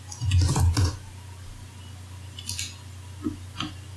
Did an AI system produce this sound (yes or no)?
no